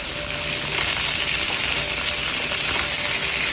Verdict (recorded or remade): recorded